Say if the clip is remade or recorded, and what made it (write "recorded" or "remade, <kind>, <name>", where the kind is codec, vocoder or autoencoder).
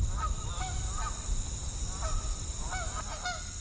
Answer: recorded